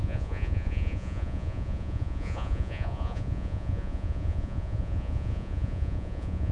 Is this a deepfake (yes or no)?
yes